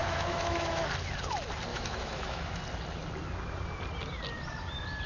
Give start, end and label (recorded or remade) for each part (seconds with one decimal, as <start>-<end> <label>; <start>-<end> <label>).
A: 0.0-0.8 remade; 0.8-1.7 recorded; 1.7-2.6 remade; 2.6-5.1 recorded